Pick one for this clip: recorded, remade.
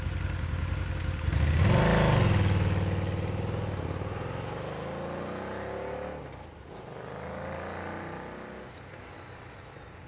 recorded